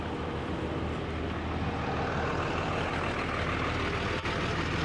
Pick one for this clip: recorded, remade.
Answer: recorded